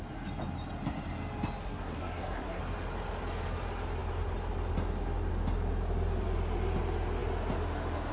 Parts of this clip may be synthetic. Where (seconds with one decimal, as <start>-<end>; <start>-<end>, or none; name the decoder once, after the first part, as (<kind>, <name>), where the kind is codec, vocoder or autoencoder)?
1.6-2.6 (codec, SNAC)